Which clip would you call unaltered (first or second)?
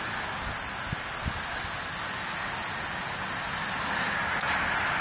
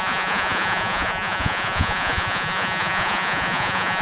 first